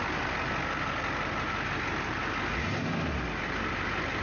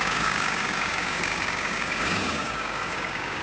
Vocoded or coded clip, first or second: second